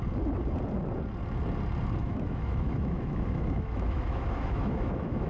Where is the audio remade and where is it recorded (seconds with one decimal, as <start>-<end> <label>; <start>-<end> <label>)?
0.0-2.0 recorded; 2.0-5.3 remade